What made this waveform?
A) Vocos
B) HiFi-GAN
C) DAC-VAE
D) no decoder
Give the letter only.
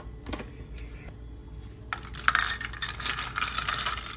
D